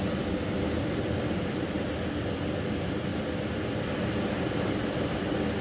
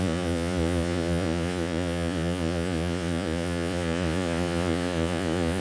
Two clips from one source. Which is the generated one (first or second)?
second